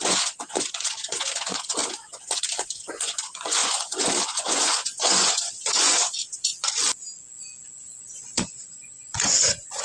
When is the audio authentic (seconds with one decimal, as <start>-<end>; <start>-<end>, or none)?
6.8-8.1